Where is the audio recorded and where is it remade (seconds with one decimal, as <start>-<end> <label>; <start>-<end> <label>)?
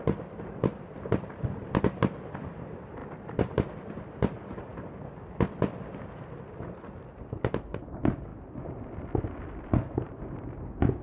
0.0-11.0 recorded